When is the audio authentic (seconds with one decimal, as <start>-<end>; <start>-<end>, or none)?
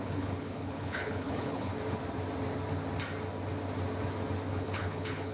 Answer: 1.7-4.5